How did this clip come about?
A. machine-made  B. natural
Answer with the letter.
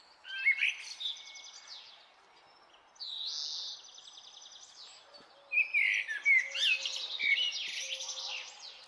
B